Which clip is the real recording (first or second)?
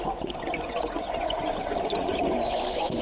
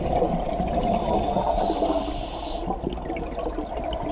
second